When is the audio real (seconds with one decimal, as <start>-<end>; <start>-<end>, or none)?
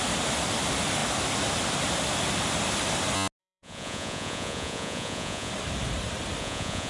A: 0.0-3.4; 5.5-6.4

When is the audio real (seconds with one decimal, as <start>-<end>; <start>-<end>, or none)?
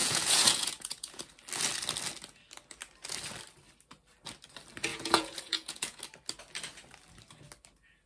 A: 1.2-4.9; 6.0-8.1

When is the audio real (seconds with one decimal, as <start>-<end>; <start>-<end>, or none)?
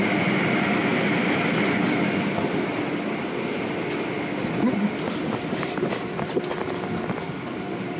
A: 0.0-8.0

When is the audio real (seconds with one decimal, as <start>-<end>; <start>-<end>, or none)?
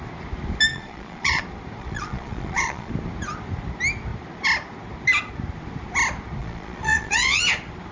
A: 0.0-0.7; 1.4-1.8; 2.9-6.4; 7.4-7.9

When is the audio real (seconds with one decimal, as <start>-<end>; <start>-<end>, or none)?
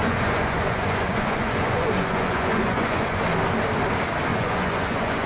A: 3.2-4.3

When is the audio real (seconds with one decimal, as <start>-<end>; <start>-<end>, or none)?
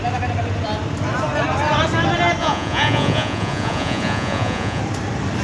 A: 0.0-2.4; 4.8-5.4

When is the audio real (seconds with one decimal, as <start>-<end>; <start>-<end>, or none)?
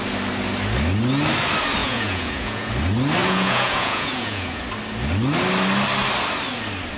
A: 0.0-1.8; 2.7-3.2; 4.6-7.0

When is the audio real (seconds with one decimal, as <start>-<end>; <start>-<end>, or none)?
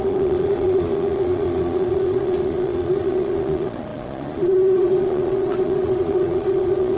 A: none